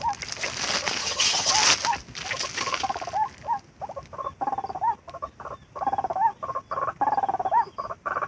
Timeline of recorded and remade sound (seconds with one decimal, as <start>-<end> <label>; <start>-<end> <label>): 0.0-1.0 recorded; 1.0-1.5 remade; 1.5-8.3 recorded